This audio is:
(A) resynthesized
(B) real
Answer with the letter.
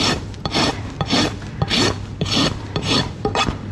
A